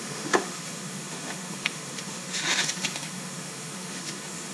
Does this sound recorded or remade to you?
remade